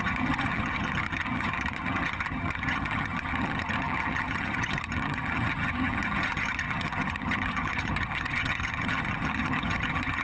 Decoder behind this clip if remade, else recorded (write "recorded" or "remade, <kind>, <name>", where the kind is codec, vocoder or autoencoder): remade, vocoder, HiFi-GAN